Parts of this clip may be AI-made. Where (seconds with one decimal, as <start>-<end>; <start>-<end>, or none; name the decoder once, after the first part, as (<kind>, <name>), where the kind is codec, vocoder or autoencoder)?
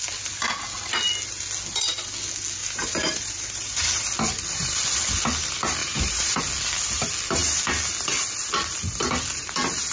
2.6-4.0 (vocoder, BigVGAN v2); 5.8-6.4